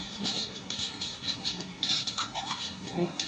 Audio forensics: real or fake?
fake